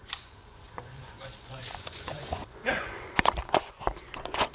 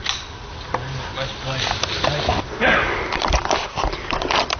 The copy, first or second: first